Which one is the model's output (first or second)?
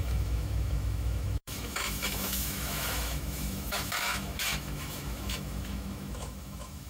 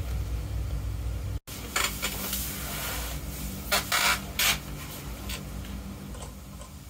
first